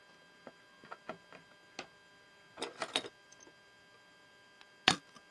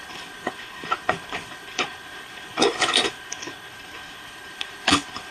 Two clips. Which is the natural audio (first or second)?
first